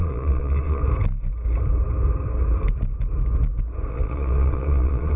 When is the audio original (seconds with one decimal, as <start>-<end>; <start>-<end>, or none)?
0.8-3.9